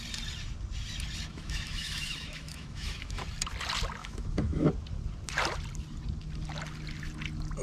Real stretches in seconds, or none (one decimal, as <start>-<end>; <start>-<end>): 0.0-1.3; 3.2-4.0; 4.7-7.6